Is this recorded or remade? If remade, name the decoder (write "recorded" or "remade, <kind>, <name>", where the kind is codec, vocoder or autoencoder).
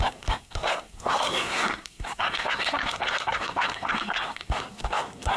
remade, codec, SNAC